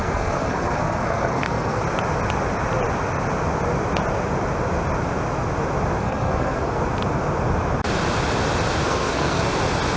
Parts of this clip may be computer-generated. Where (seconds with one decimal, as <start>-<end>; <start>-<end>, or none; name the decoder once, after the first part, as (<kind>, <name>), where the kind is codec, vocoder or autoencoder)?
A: 0.0-1.8 (codec, SNAC); 6.0-6.8; 8.8-9.4